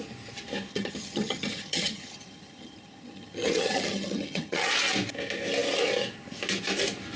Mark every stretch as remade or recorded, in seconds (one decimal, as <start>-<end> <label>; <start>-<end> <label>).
0.0-0.7 recorded; 0.7-4.7 remade; 4.7-7.2 recorded